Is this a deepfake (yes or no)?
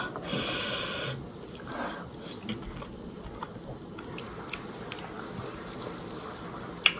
no